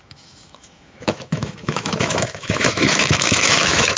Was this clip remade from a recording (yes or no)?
yes